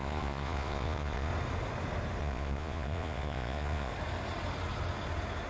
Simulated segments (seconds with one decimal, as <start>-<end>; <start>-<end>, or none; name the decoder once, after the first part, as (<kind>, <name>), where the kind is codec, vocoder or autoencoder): 0.0-1.3 (vocoder, Vocos); 2.2-3.9